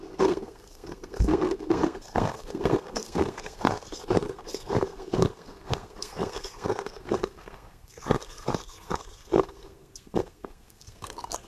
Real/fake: fake